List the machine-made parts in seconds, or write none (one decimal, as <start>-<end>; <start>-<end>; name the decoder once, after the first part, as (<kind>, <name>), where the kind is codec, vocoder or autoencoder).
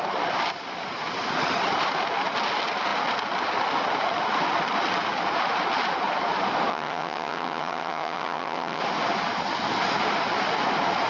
6.7-8.8 (vocoder, HiFi-GAN)